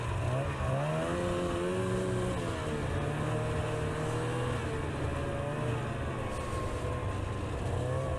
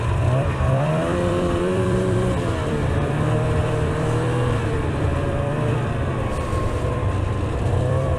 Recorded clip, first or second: first